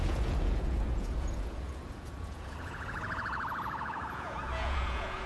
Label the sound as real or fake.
fake